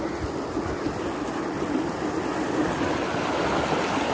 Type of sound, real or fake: real